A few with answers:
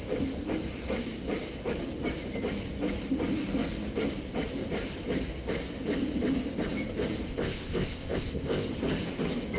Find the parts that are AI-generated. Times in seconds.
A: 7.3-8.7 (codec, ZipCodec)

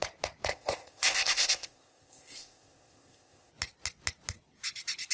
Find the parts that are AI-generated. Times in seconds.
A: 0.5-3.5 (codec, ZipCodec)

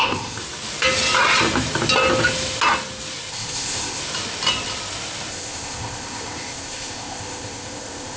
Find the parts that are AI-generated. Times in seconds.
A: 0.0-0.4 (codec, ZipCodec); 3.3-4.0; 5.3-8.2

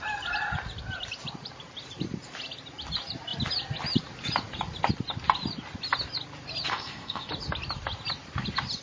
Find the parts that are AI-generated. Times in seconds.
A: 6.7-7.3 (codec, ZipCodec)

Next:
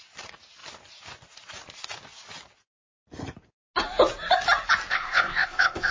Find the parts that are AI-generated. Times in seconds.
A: 4.9-5.9 (codec, ZipCodec)

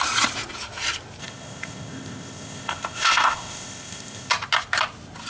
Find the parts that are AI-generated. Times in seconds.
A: 1.2-4.3 (codec, ZipCodec)

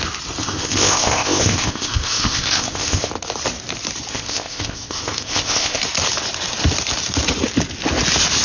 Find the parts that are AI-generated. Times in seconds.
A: 0.4-3.1 (codec, ZipCodec); 4.1-5.8